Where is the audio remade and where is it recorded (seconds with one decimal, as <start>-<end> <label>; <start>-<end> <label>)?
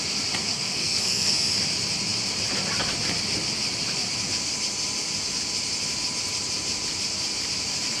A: 0.0-0.4 recorded; 0.4-1.5 remade; 1.5-8.0 recorded